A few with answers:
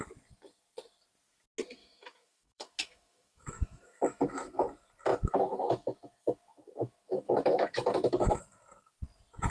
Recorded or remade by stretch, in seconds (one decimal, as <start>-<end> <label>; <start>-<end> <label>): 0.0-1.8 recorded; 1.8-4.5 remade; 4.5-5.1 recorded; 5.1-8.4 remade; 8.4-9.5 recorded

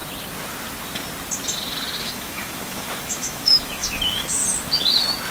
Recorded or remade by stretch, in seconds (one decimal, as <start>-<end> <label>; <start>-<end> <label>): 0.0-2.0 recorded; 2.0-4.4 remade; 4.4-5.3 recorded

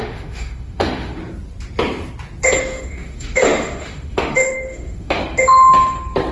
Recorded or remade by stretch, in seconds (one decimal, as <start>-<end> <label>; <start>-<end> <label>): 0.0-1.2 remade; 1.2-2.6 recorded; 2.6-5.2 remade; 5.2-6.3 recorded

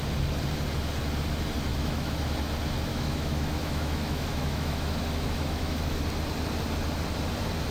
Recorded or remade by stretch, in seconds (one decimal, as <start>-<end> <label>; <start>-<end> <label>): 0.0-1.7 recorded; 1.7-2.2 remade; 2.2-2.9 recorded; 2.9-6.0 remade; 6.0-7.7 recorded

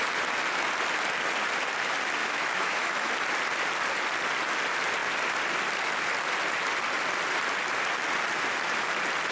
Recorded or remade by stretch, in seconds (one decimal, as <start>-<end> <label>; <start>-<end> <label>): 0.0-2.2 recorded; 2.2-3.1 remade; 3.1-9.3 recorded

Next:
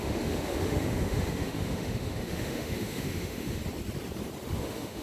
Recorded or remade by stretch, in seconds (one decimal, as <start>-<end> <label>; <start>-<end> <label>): 0.0-3.6 remade; 3.6-4.6 recorded; 4.6-5.0 remade

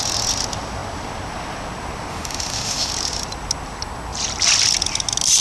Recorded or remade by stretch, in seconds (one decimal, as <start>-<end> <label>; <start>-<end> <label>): 0.0-2.1 recorded; 2.1-2.9 remade; 2.9-5.4 recorded